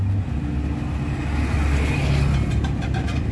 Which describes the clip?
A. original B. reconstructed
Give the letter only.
A